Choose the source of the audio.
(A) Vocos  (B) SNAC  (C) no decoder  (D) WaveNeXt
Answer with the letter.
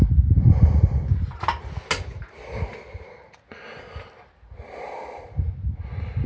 C